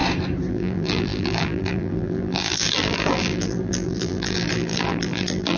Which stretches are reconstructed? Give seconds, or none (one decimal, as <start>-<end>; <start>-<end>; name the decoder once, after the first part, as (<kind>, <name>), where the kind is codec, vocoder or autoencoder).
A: 0.5-5.6 (vocoder, BigVGAN v2)